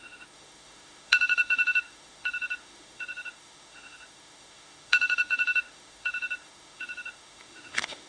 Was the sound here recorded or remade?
remade